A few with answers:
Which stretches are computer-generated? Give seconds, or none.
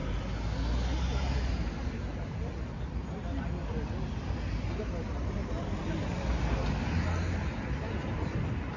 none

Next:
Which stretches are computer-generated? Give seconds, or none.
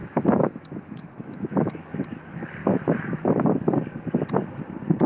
0.0-1.8 (autoencoder, DAC-VAE); 2.6-3.3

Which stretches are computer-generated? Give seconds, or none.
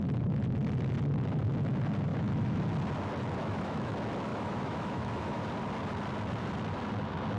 2.1-2.6 (autoencoder, DAC-VAE); 3.4-3.9; 4.3-5.4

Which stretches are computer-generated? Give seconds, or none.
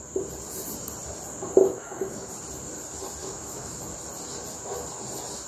1.6-2.3 (autoencoder, DAC-VAE); 3.2-3.8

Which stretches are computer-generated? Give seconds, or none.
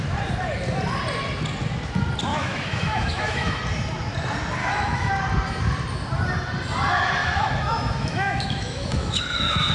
2.3-3.6 (autoencoder, DAC-VAE); 4.6-5.1; 7.2-9.7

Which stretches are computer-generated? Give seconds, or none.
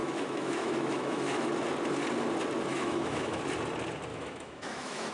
0.0-1.5 (autoencoder, DAC-VAE); 2.7-3.4; 4.1-5.1